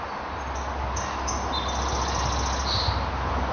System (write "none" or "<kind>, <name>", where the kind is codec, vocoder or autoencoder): none